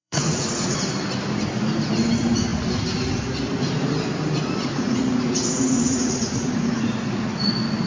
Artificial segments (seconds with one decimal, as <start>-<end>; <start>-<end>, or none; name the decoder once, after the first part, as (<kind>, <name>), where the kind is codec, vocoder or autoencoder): 0.0-0.8 (vocoder, Vocos); 4.7-7.5